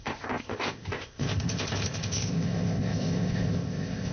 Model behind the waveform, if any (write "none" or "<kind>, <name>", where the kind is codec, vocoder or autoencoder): codec, ZipCodec